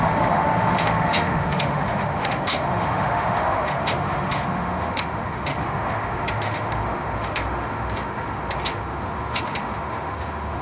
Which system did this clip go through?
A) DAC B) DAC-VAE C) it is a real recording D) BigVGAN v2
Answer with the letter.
B